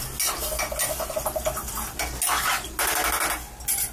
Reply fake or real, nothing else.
real